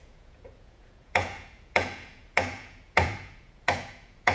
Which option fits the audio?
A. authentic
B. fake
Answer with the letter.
B